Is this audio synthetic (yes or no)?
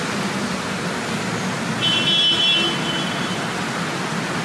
no